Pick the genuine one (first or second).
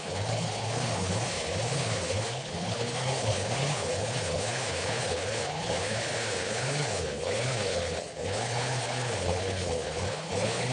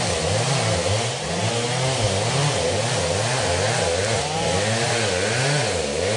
second